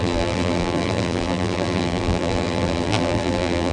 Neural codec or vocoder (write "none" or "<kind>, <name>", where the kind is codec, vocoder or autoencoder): vocoder, BigVGAN v2